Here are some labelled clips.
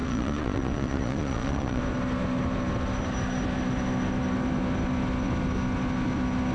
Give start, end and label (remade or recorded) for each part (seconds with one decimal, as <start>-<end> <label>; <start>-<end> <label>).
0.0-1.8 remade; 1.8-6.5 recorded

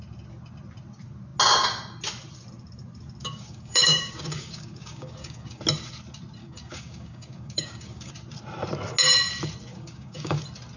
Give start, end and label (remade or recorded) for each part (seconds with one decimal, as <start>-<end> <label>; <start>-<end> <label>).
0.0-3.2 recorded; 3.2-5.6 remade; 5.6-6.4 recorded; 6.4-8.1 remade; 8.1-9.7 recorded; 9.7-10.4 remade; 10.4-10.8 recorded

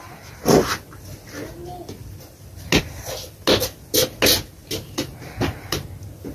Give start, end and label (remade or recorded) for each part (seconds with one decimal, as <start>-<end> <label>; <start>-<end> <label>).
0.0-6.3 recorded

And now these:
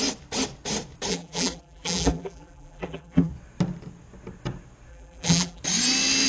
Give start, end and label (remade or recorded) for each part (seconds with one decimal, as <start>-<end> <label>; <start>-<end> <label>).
0.0-1.1 recorded; 1.1-3.3 remade; 3.3-4.9 recorded; 4.9-5.6 remade; 5.6-6.3 recorded

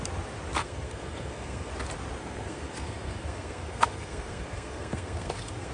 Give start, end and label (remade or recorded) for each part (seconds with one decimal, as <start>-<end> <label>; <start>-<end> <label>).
0.0-0.6 recorded; 0.6-1.7 remade; 1.7-2.2 recorded; 2.2-5.7 remade

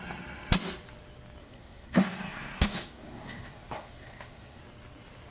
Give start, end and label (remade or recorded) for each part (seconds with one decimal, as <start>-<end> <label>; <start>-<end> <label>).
0.0-1.4 recorded; 1.4-4.6 remade; 4.6-5.3 recorded

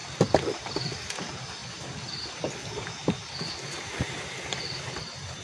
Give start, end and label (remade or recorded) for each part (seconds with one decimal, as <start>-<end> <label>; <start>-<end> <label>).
0.0-5.4 recorded

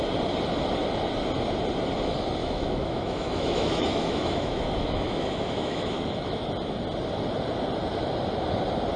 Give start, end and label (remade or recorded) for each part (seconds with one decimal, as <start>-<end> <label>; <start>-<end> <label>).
0.0-2.4 recorded; 2.4-6.5 remade; 6.5-9.0 recorded